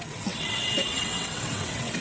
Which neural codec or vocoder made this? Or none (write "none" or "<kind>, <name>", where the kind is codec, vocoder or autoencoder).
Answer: vocoder, WaveNeXt